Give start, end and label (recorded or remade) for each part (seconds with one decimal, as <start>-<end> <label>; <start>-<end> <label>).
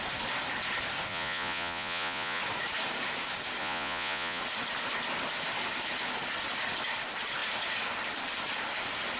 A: 0.0-1.1 recorded; 1.1-2.4 remade; 2.4-3.6 recorded; 3.6-4.4 remade; 4.4-9.2 recorded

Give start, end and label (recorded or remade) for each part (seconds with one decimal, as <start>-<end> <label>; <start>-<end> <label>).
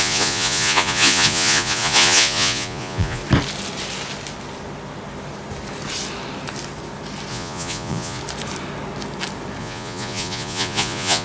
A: 0.0-3.2 remade; 3.2-7.3 recorded; 7.3-8.2 remade; 8.2-9.6 recorded; 9.6-11.2 remade